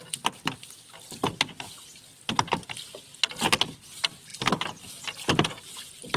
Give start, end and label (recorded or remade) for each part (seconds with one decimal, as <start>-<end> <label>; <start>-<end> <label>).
0.0-6.2 recorded